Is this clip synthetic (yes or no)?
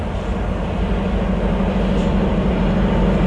yes